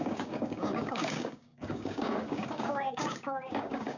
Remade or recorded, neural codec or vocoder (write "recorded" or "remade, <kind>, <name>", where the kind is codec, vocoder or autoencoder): remade, codec, DAC